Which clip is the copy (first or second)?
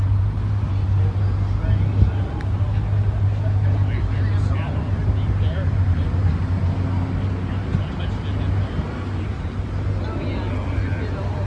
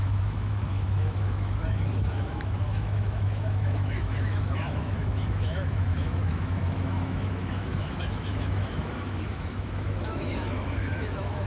second